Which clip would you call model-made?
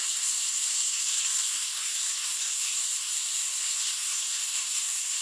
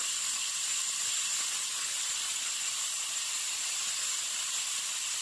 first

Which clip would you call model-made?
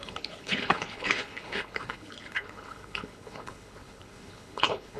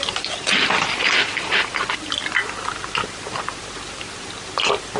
first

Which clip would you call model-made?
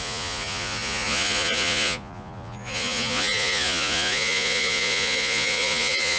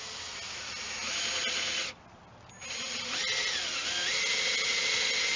first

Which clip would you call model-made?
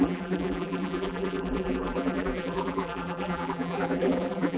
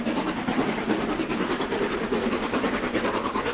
first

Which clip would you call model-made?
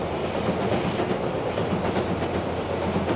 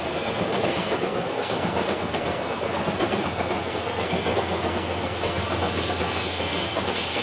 second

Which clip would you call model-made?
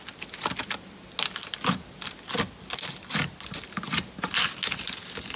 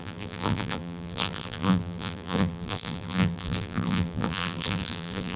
second